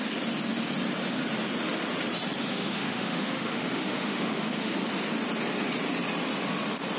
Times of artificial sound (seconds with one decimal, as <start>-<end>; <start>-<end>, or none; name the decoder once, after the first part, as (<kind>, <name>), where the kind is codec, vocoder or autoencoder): 2.5-4.7 (autoencoder, DAC-VAE)